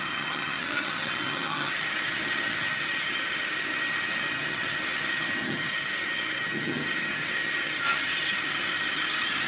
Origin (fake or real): fake